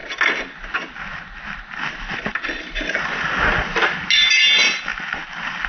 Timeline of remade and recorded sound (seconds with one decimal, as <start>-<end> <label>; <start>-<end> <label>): 0.0-5.7 recorded